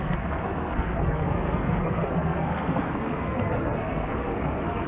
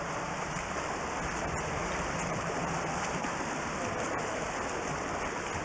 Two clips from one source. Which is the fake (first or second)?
first